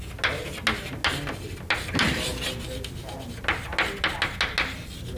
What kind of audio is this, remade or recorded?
recorded